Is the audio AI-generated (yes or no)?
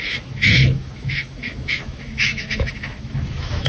yes